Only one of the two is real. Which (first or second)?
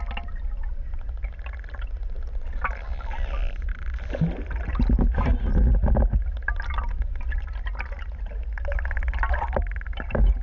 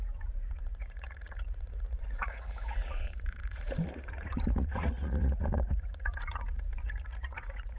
first